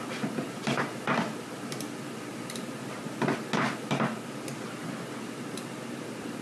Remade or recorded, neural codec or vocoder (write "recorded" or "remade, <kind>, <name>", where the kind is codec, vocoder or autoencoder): recorded